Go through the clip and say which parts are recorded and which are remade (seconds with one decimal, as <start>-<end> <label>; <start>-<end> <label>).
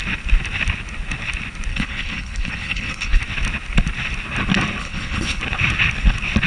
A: 0.0-1.7 recorded; 1.7-3.2 remade; 3.2-4.8 recorded; 4.8-5.4 remade; 5.4-6.5 recorded